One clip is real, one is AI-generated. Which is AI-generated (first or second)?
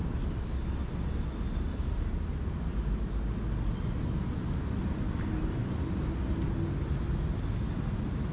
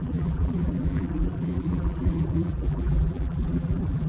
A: second